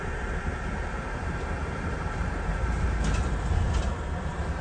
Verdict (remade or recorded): remade